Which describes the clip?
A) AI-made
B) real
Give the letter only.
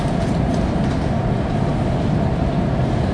B